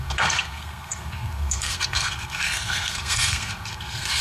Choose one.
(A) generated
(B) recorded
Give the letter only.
A